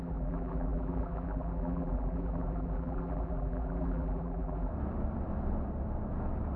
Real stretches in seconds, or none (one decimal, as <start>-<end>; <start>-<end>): 4.7-6.6